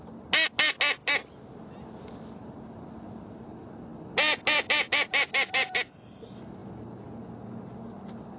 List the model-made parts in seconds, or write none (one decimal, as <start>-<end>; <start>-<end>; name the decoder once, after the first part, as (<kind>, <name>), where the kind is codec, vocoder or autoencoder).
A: none